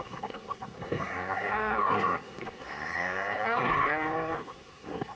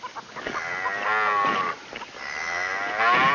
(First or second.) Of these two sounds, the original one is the second